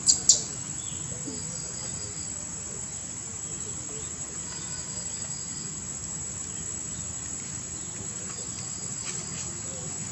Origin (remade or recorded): recorded